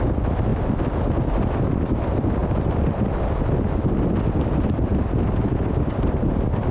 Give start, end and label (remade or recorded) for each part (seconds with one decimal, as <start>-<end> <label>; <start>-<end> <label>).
0.0-2.4 recorded; 2.4-3.9 remade; 3.9-4.9 recorded; 4.9-6.3 remade; 6.3-6.7 recorded